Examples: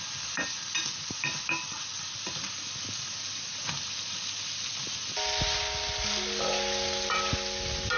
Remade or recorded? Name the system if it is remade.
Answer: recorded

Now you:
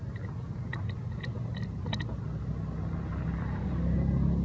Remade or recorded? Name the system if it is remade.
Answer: recorded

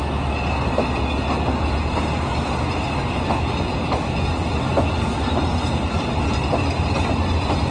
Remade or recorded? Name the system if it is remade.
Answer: recorded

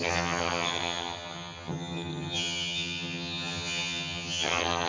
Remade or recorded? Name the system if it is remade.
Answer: remade, vocoder, HiFi-GAN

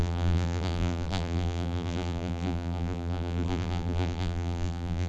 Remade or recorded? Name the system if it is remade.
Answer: remade, vocoder, BigVGAN v2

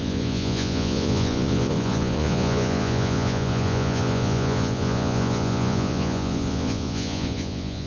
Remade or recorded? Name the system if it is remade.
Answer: remade, vocoder, Vocos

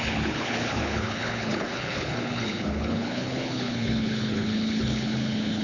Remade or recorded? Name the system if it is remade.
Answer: remade, codec, HILCodec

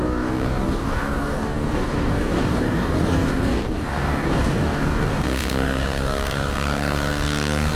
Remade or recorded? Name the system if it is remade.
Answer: remade, codec, DAC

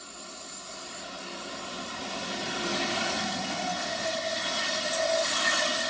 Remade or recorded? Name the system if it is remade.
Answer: recorded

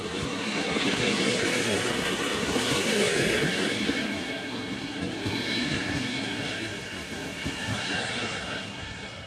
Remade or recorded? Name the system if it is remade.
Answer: remade, codec, SNAC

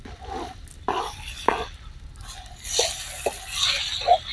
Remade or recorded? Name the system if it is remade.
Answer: recorded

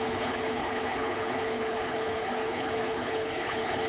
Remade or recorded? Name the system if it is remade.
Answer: remade, codec, HILCodec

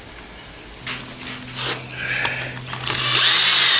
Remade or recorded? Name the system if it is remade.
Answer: recorded